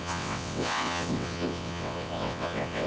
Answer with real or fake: fake